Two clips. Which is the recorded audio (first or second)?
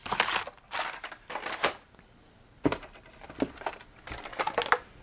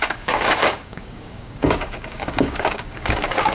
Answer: first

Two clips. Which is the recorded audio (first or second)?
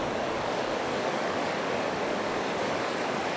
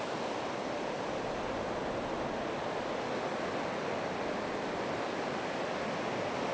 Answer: second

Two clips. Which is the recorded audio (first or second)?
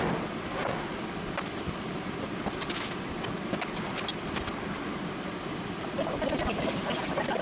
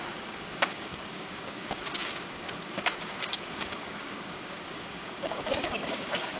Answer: first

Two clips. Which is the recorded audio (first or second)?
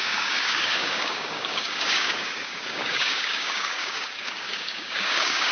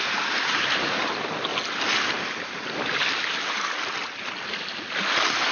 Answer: second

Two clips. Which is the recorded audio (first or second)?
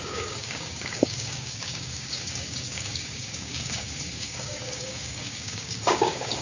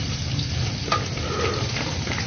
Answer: second